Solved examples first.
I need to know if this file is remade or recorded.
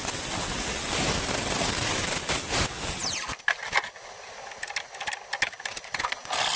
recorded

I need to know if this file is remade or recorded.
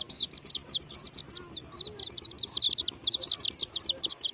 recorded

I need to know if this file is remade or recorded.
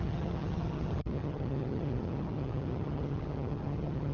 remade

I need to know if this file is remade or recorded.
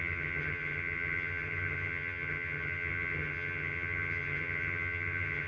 remade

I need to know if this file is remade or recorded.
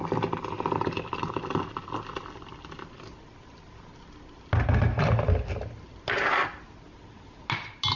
recorded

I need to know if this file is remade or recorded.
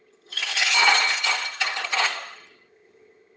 remade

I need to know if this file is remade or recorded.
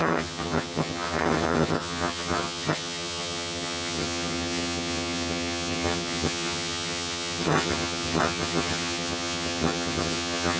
remade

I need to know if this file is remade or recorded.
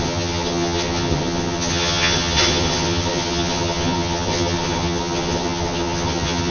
remade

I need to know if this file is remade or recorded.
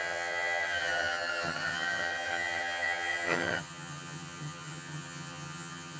remade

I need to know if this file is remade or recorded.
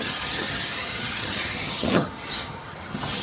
remade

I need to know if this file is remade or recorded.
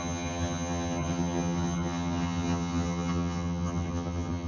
remade